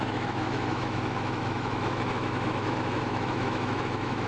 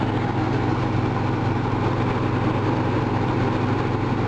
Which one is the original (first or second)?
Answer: second